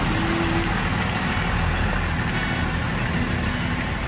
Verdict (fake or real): real